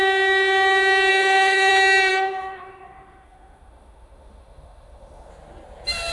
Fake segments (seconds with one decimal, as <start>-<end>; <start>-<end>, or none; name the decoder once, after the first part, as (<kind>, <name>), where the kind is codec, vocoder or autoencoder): 1.1-1.7 (autoencoder, DAC-VAE); 2.1-5.3